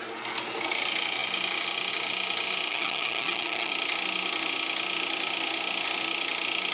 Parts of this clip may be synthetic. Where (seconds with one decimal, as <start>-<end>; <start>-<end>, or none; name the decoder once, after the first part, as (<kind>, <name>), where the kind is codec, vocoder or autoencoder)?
2.7-3.7 (vocoder, HiFi-GAN)